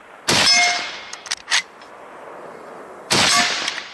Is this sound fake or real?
real